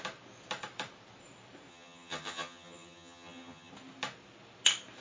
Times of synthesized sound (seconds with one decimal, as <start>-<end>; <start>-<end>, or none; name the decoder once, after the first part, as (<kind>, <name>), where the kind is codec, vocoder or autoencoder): 1.7-3.7 (vocoder, HiFi-GAN)